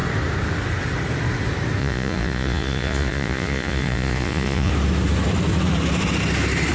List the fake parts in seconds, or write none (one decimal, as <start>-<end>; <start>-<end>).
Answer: 1.8-4.7